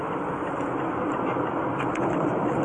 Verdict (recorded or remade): recorded